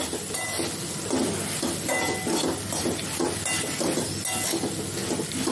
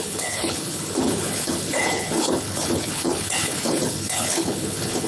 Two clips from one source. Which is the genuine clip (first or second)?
first